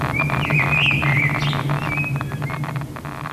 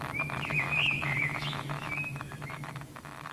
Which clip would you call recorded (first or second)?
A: first